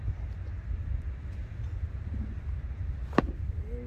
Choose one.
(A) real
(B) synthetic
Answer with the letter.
A